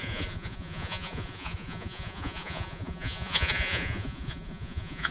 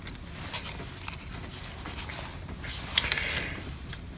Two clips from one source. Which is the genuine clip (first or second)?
second